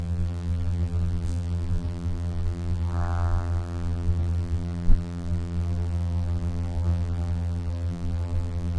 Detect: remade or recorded remade